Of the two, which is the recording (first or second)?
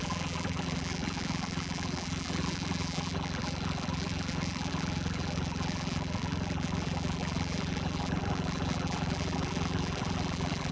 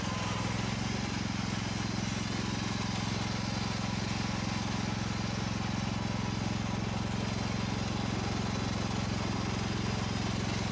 second